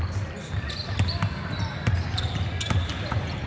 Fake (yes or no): no